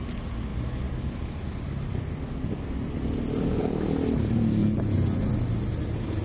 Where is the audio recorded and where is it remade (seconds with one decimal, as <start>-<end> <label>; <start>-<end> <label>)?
0.0-4.6 recorded; 4.6-5.3 remade; 5.3-6.2 recorded